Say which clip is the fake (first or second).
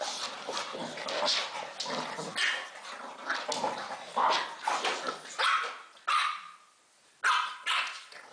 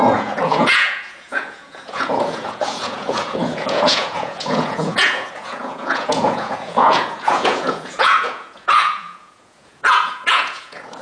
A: second